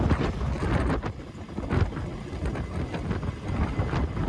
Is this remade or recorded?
recorded